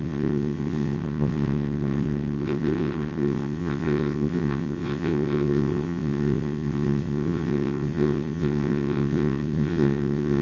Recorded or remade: remade